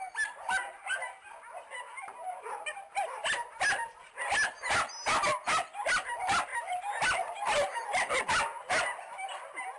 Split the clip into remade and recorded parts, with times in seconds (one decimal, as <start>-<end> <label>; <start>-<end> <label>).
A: 0.0-9.8 recorded